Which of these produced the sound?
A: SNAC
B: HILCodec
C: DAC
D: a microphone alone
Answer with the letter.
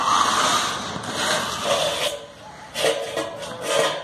D